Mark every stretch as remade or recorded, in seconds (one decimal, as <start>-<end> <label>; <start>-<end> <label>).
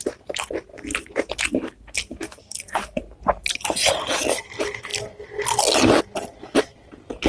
0.0-2.1 recorded; 2.1-3.0 remade; 3.0-7.3 recorded